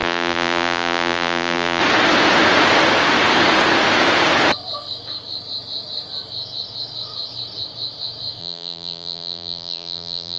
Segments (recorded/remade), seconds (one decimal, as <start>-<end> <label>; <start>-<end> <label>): 0.0-1.8 remade; 1.8-8.4 recorded; 8.4-10.4 remade